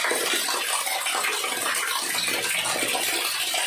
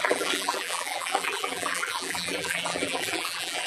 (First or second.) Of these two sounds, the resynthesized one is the second